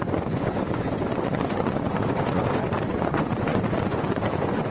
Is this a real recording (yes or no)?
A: no